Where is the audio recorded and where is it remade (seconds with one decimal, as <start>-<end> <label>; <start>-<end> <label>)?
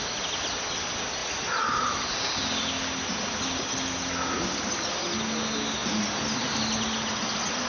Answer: 0.0-7.7 recorded